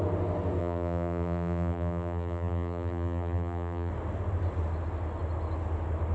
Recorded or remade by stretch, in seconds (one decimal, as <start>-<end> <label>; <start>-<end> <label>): 0.0-0.6 recorded; 0.6-3.9 remade; 3.9-6.1 recorded